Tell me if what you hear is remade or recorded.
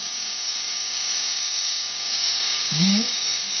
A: remade